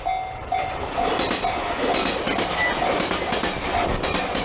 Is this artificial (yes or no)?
no